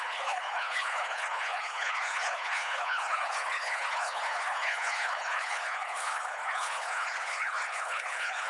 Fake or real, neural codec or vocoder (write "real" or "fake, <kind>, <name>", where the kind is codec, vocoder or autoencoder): fake, codec, HILCodec